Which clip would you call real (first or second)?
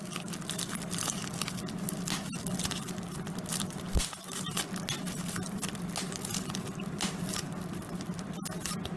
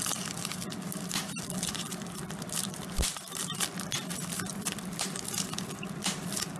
first